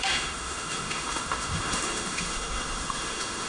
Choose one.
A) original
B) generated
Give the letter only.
B